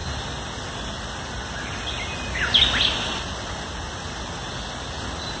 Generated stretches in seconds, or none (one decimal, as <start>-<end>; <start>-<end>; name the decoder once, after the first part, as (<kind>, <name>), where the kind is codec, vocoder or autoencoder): none